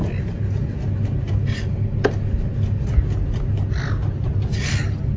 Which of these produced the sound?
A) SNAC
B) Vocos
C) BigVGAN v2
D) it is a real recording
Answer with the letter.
D